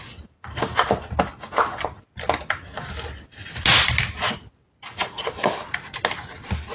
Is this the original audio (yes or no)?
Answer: yes